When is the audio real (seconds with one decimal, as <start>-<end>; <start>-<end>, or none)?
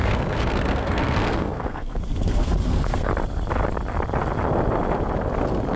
3.1-5.8